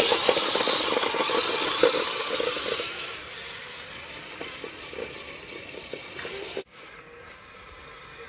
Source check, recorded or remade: recorded